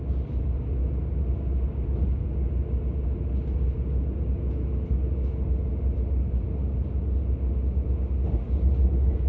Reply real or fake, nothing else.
real